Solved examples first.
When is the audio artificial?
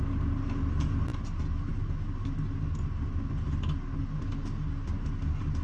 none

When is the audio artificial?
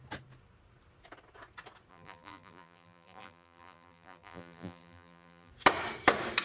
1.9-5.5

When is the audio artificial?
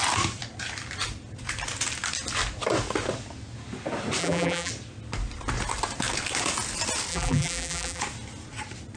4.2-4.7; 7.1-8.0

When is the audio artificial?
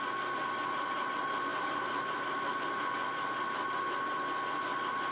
1.5-2.6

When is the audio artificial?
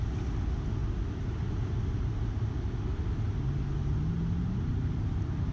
none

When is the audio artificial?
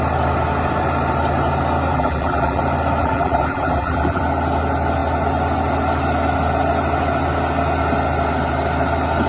1.9-2.6; 3.0-4.2